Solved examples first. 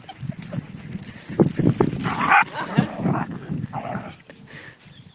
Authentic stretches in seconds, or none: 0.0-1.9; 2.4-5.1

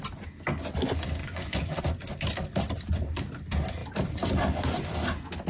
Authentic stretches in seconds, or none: 0.0-1.2; 1.8-5.5

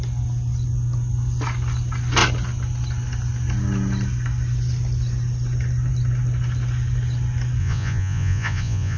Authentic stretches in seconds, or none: 0.0-7.6

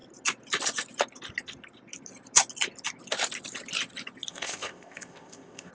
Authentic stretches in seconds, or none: 0.0-4.3

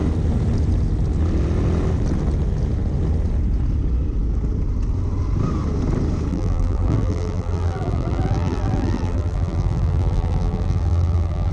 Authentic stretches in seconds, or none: 0.0-6.3

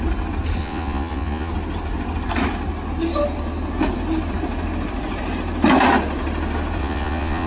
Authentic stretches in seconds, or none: 0.0-0.6; 1.5-6.8

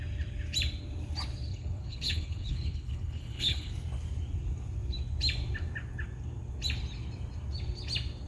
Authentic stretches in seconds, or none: 0.0-1.5; 3.7-8.3

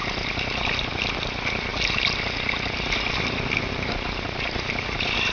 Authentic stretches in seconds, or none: 0.0-5.3